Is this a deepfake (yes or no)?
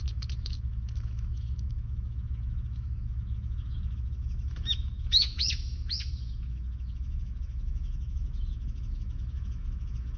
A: yes